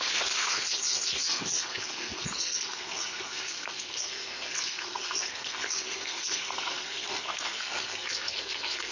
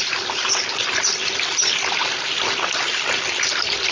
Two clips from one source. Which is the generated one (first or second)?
first